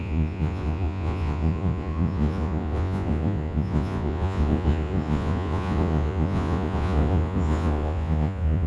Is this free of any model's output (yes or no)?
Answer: no